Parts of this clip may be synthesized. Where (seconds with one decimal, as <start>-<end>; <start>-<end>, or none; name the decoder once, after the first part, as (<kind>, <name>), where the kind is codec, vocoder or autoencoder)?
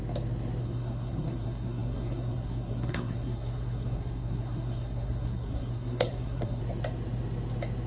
0.6-6.6 (codec, SNAC)